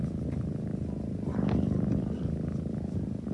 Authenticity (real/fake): real